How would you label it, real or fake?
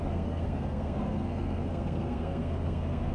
fake